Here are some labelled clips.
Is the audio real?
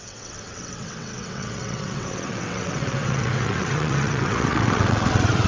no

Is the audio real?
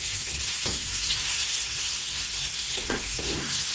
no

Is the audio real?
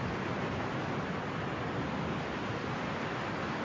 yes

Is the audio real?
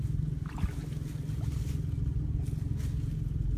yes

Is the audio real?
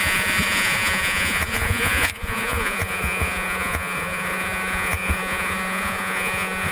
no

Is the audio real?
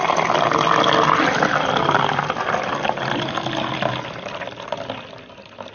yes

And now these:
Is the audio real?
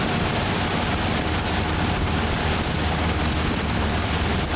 no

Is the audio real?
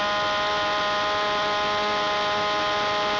yes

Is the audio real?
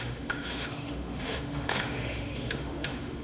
no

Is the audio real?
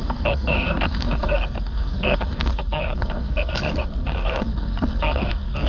no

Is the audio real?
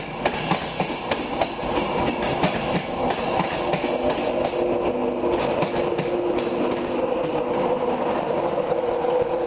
yes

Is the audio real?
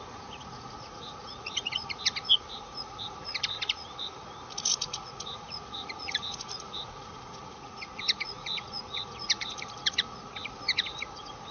no